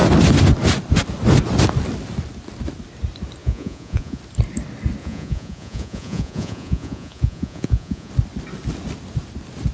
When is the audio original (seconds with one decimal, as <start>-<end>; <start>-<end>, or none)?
0.0-3.4; 4.2-5.0; 8.1-9.7